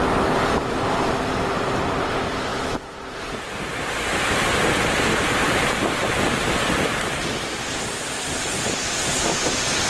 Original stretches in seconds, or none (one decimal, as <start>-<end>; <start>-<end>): 0.0-9.9